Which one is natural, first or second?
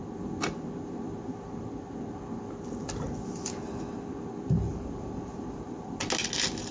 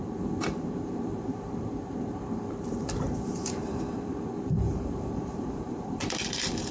first